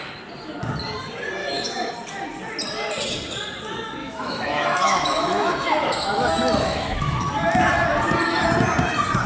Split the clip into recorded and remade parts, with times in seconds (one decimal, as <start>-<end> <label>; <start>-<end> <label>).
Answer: 0.0-1.4 recorded; 1.4-1.9 remade; 1.9-4.0 recorded; 4.0-7.3 remade; 7.3-9.3 recorded